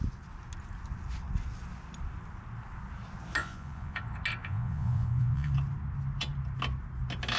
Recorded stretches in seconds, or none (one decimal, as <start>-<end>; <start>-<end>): 0.0-3.4; 4.0-4.4; 5.5-7.4